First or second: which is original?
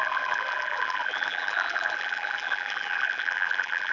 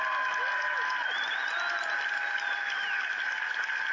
second